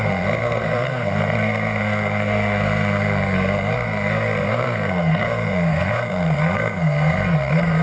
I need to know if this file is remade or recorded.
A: remade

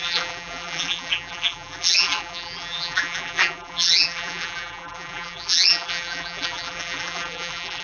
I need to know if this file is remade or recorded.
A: remade